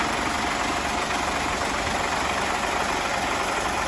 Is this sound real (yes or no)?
yes